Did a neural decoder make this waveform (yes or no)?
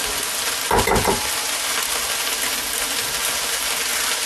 no